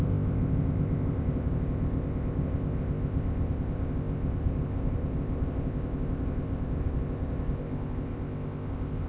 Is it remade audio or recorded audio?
remade